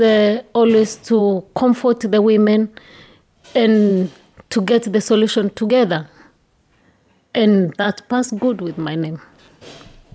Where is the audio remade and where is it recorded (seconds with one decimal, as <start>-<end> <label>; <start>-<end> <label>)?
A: 0.0-6.8 recorded; 6.8-8.3 remade; 8.3-10.1 recorded